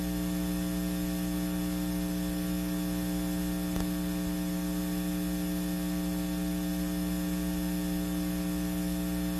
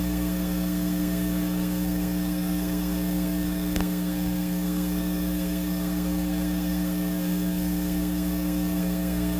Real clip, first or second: first